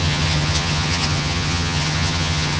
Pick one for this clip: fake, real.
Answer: fake